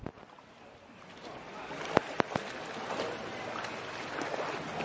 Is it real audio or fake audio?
real